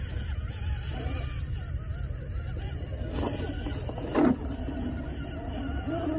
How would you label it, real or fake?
real